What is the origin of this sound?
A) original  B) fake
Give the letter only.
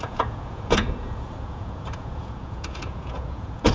B